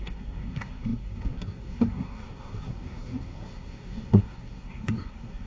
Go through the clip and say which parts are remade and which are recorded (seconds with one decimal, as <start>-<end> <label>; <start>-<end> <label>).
0.0-5.5 remade